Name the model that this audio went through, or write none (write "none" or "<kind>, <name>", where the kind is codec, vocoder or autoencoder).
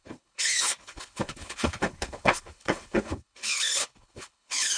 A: codec, HILCodec